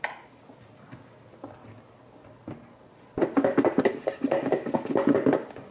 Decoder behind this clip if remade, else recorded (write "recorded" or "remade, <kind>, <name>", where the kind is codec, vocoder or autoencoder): recorded